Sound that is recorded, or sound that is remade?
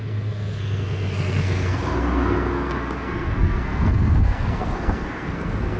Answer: remade